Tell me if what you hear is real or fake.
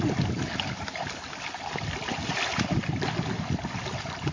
real